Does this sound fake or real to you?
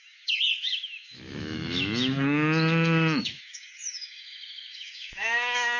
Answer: fake